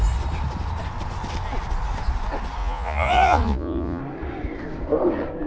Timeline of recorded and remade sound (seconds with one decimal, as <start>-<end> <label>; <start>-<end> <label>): 0.0-2.6 recorded; 2.6-4.0 remade; 4.0-5.5 recorded